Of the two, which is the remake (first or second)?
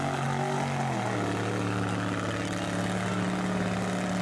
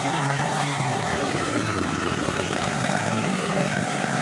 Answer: second